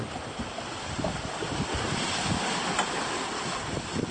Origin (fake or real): real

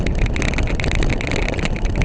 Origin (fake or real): real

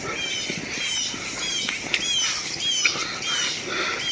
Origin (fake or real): real